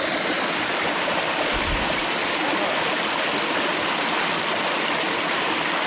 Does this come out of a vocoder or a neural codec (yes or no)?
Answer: no